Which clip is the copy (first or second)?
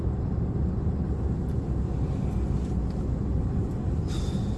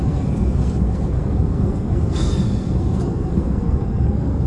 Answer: second